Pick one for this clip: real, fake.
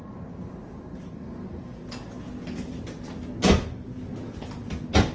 real